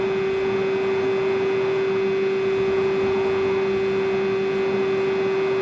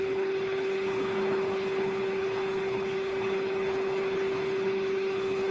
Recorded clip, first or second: first